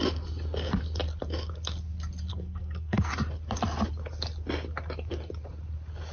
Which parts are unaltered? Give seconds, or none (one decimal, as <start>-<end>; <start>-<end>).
0.0-2.3; 3.1-6.1